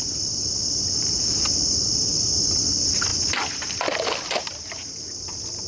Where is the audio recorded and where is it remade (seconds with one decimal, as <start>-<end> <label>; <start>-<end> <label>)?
0.0-5.7 recorded